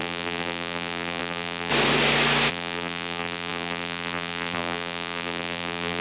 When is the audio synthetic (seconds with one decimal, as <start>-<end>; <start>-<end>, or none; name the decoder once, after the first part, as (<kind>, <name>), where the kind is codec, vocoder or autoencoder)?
0.0-1.7 (vocoder, BigVGAN v2); 2.5-6.0

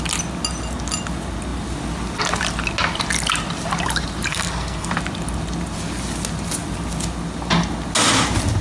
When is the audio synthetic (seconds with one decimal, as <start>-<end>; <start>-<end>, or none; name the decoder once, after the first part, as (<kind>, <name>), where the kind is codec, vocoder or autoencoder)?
4.3-4.9 (codec, SNAC)

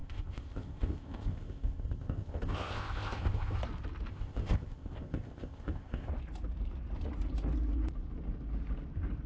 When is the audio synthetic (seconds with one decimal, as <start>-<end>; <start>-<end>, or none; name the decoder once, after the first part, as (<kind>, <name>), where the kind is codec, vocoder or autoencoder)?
0.0-3.6 (codec, ZipCodec); 4.1-6.1

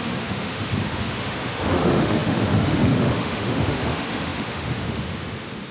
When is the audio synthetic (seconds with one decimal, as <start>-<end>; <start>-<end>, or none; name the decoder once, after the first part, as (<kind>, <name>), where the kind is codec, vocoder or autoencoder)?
0.0-5.7 (autoencoder, DAC-VAE)